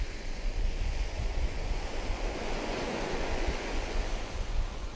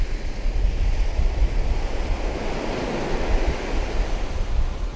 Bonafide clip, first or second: second